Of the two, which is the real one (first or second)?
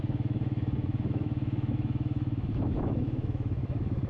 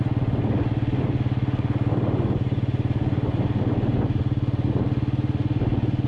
second